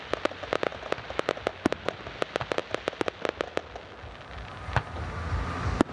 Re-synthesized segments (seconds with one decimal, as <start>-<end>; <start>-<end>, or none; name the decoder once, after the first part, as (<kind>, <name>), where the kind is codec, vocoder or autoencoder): none